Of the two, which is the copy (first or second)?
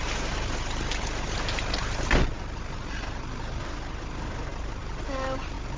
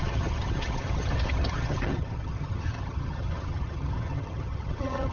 second